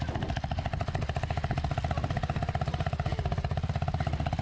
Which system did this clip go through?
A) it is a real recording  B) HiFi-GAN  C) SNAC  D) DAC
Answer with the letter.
A